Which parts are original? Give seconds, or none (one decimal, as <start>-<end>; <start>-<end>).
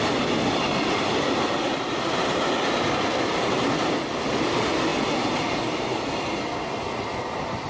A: 0.0-7.7